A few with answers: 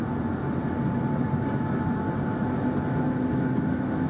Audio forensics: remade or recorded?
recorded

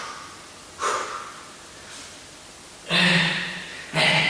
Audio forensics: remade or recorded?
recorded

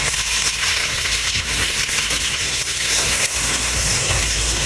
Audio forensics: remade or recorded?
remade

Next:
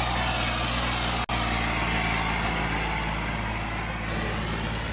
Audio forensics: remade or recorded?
recorded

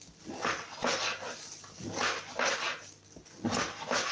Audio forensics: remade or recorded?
recorded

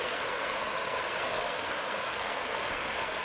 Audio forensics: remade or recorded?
remade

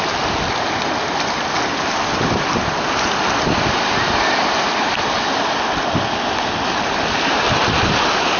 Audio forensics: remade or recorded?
recorded